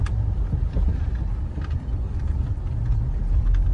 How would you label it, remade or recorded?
remade